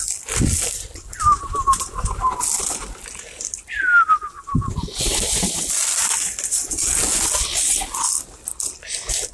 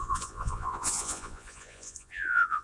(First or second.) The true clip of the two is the first